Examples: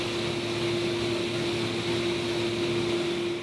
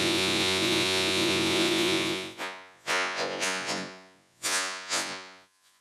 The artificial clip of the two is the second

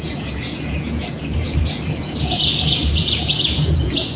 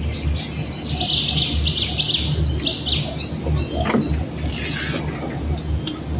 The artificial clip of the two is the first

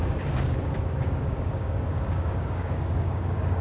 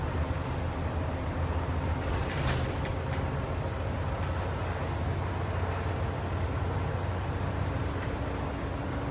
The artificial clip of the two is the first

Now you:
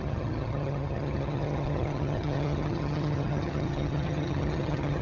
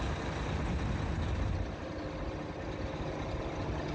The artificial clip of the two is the first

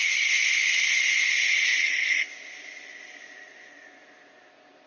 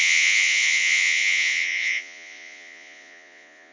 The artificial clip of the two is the second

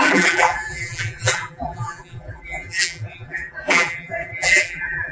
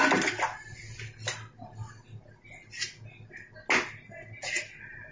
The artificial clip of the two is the first